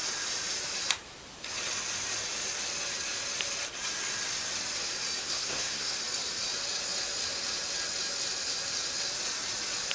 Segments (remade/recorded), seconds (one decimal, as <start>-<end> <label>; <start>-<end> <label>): 0.0-5.2 recorded; 5.2-6.0 remade; 6.0-9.9 recorded